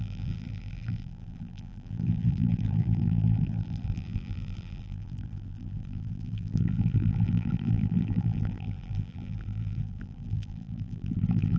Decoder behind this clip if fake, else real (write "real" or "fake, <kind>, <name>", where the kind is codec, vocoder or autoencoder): fake, vocoder, BigVGAN v2